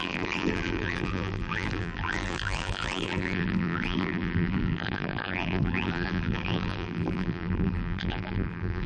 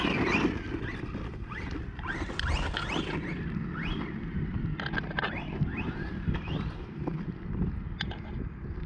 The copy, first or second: first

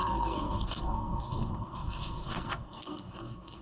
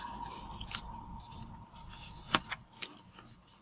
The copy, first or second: first